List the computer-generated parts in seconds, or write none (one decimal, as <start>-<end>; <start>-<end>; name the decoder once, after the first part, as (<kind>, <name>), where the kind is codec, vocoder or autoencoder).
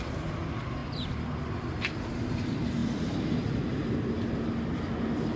none